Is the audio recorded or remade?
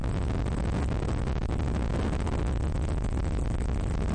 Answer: recorded